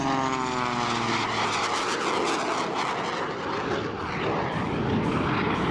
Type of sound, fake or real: real